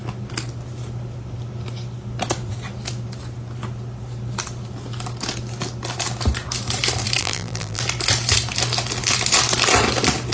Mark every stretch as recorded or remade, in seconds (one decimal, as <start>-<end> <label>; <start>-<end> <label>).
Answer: 0.0-7.2 recorded; 7.2-7.8 remade; 7.8-10.3 recorded